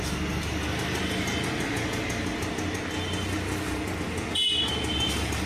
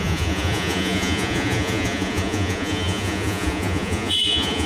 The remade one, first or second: second